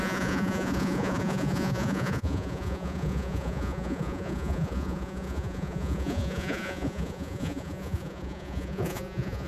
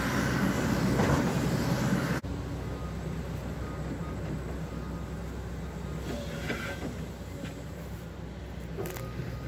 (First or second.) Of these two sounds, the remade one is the first